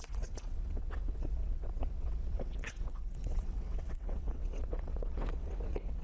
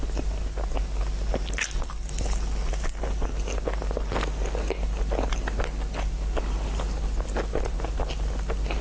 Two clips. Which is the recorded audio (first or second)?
second